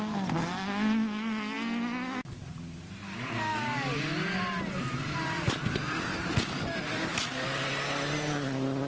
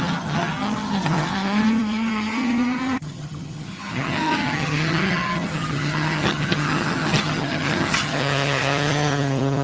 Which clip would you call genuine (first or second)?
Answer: first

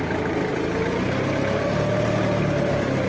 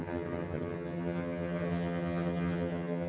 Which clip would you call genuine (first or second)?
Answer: first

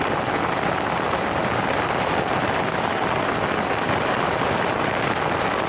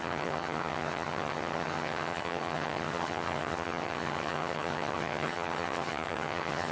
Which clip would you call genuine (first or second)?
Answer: first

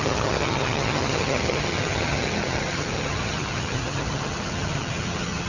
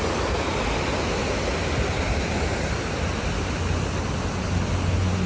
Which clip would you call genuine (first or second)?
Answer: second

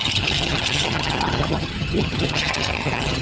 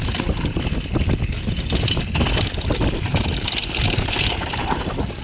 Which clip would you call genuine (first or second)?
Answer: second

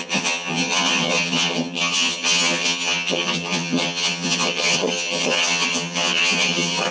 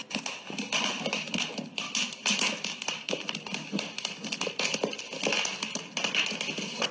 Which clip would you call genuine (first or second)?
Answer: second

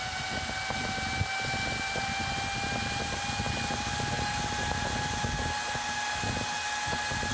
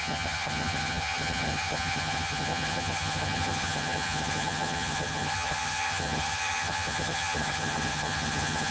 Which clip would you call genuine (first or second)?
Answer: first